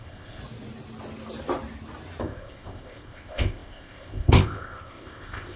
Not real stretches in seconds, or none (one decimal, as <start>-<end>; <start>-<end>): 0.0-0.4; 2.2-5.6